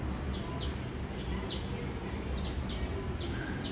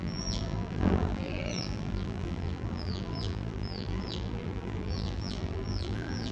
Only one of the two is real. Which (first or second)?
first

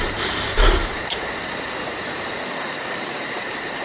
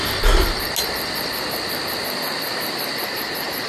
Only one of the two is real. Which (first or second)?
second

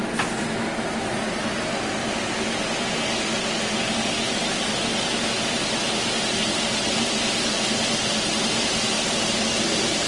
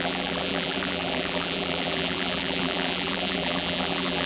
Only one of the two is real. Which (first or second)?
first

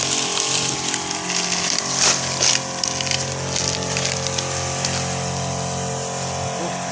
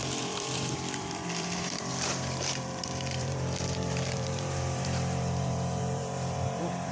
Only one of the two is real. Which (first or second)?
first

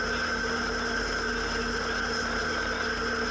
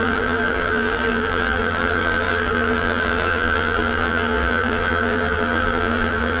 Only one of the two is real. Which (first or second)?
first